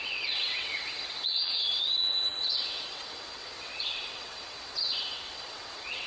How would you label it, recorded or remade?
remade